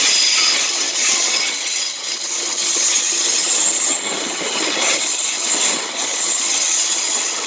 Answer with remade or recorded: remade